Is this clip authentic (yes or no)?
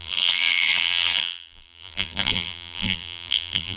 no